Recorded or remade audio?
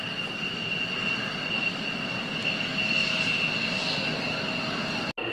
recorded